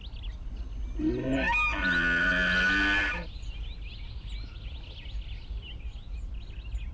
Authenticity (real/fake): real